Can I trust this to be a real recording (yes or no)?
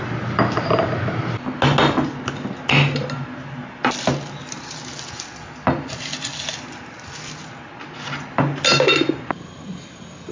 yes